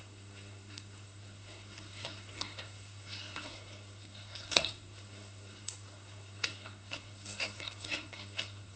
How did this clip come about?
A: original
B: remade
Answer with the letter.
B